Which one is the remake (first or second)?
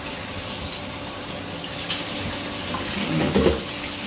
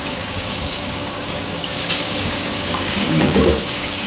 second